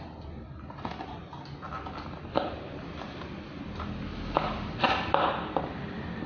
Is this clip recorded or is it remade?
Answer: recorded